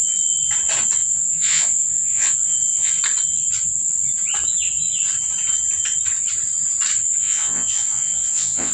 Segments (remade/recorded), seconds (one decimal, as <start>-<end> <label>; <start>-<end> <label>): 0.0-1.0 recorded; 1.0-2.9 remade; 2.9-7.2 recorded; 7.2-8.7 remade